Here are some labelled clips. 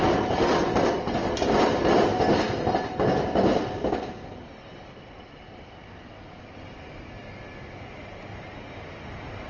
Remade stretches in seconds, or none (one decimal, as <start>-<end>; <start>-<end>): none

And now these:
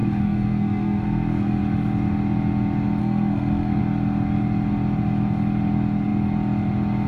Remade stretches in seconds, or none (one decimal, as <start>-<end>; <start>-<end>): 0.0-1.6; 3.0-3.8

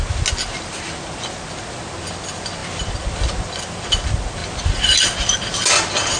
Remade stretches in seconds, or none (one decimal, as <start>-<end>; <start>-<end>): none